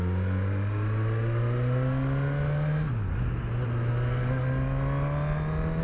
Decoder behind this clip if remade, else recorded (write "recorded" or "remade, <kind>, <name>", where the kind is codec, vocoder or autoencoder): recorded